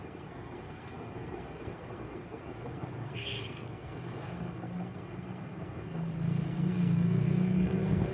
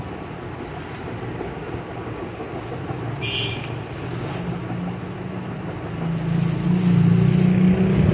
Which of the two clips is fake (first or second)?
first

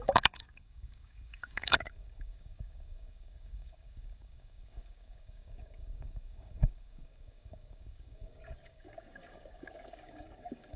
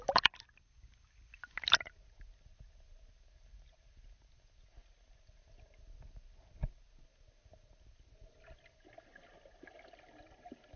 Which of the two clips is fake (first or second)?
first